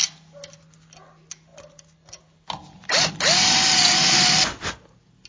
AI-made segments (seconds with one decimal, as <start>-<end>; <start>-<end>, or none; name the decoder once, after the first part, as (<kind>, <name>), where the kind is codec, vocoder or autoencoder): none